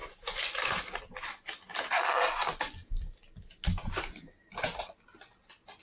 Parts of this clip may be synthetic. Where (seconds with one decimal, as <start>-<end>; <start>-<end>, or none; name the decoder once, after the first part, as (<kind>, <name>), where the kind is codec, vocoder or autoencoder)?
0.0-1.0 (vocoder, BigVGAN v2)